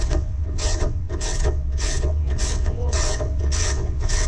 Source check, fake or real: fake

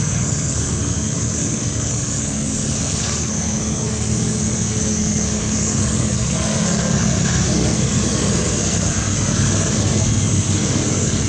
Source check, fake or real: fake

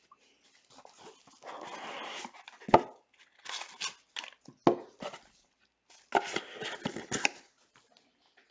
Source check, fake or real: real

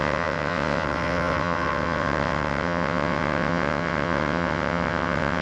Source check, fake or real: fake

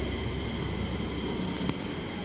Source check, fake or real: real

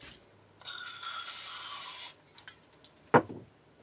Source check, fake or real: real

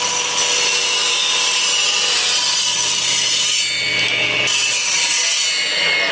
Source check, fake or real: real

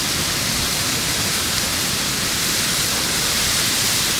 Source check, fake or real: real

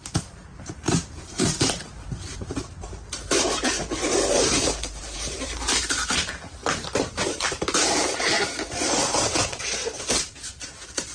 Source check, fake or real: fake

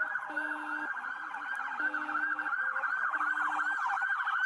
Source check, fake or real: real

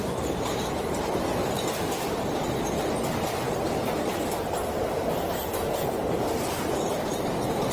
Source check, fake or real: real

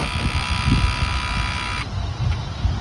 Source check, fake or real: real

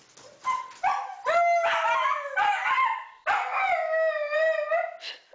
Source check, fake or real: real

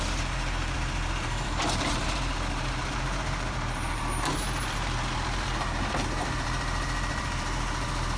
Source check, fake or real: fake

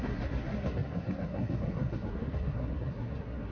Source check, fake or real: fake